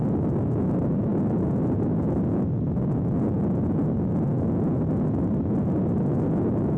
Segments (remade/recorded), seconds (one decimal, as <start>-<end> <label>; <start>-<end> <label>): 0.0-6.8 recorded